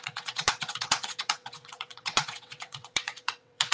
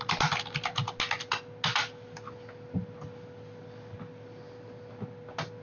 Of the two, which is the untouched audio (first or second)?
second